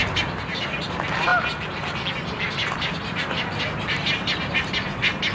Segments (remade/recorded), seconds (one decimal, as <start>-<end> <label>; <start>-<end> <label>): 0.0-5.3 recorded